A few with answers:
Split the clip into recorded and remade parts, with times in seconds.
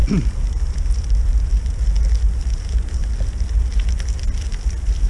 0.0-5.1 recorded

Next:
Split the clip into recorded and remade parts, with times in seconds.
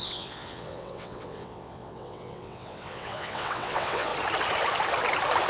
0.0-4.1 remade; 4.1-5.5 recorded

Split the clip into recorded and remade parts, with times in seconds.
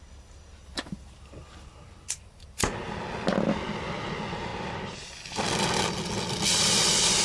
0.0-7.2 recorded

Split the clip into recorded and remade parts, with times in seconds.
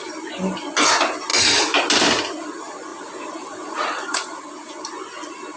0.0-2.9 recorded; 2.9-4.7 remade; 4.7-5.6 recorded